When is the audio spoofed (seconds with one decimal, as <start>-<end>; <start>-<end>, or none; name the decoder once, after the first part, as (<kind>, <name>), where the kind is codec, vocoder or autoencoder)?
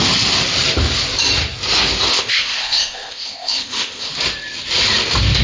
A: 2.1-4.1 (codec, ZipCodec)